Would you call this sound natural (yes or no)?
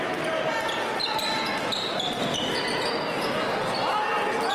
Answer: yes